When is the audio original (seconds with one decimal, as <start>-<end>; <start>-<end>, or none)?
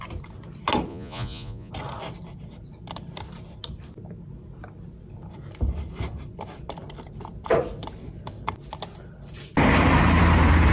0.0-0.9; 1.7-10.7